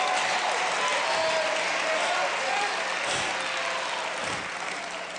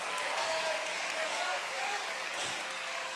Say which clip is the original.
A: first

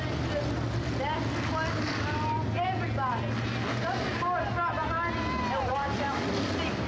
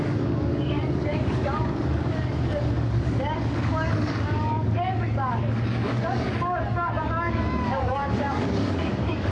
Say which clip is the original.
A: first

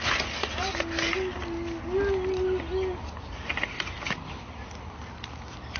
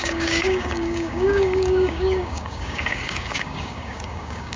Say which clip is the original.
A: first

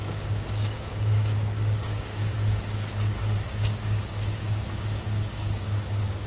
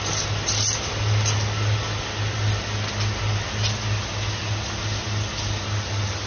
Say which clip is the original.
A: second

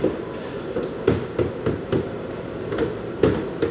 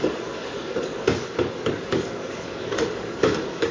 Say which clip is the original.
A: first